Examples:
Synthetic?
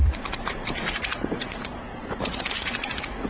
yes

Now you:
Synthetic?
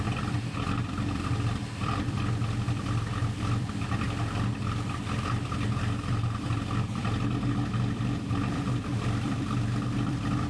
yes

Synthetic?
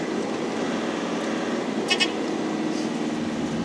no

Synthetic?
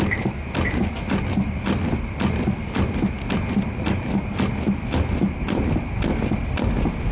no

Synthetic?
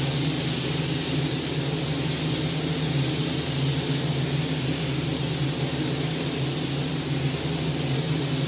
no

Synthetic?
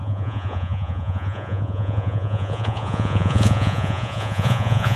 yes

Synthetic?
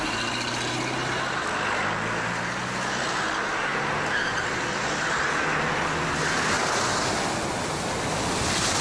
no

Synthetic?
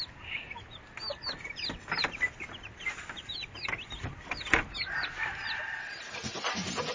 no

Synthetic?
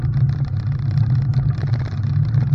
no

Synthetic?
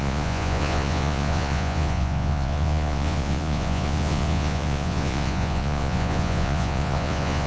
yes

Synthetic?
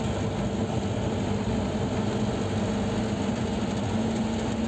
no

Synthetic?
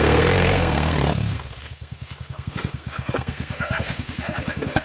yes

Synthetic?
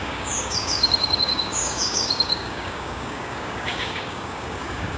yes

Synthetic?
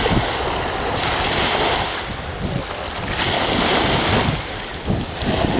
no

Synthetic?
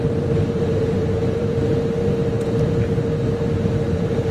yes